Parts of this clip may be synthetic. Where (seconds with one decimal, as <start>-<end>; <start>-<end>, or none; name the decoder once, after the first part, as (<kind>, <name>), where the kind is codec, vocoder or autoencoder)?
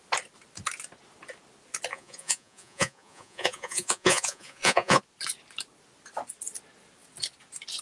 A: 1.9-5.0 (vocoder, Vocos)